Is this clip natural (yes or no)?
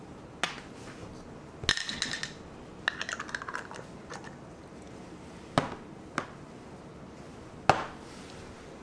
yes